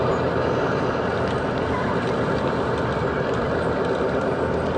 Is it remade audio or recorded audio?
recorded